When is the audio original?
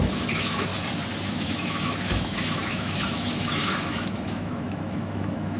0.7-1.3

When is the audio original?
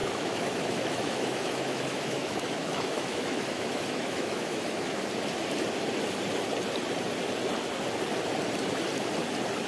5.0-9.7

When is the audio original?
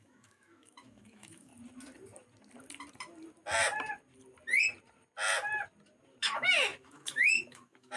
1.5-6.2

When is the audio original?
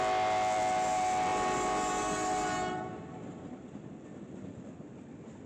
0.0-5.5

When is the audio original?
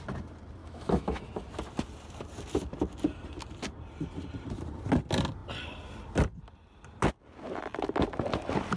0.0-0.6; 1.2-8.8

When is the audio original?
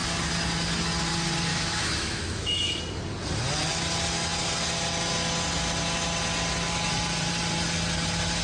0.0-1.5; 2.8-8.4